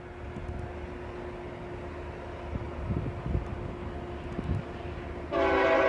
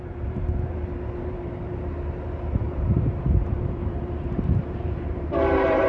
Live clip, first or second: first